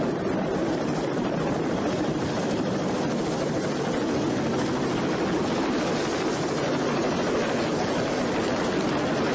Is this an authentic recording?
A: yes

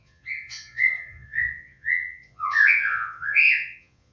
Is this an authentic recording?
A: no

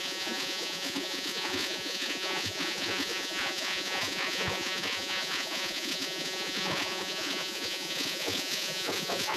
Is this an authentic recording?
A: no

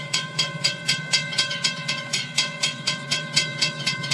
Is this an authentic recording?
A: no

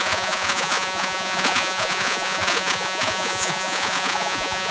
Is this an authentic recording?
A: no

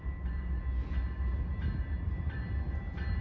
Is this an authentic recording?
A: yes